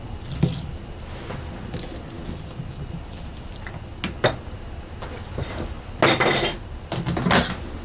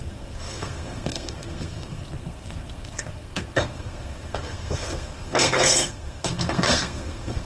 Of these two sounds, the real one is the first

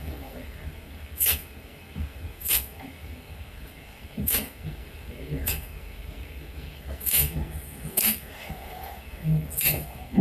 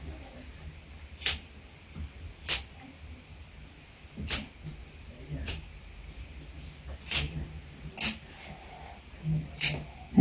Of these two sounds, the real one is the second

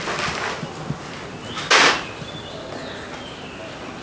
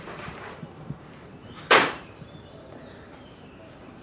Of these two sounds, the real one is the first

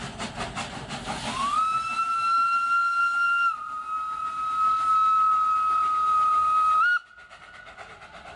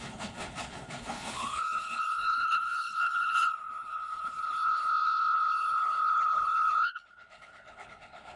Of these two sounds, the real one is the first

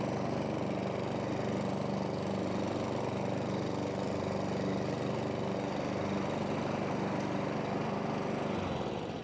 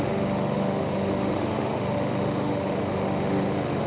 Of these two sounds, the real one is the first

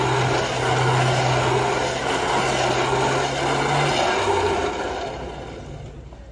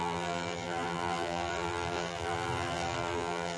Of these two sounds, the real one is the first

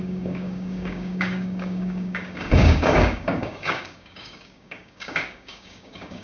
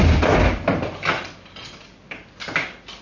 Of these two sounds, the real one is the second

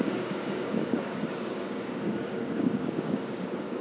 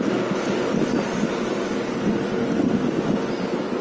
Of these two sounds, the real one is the second